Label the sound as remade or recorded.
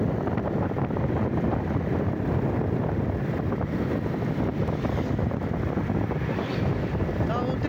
recorded